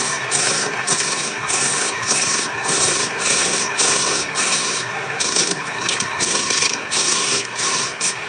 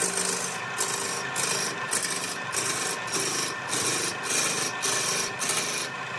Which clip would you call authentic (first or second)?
second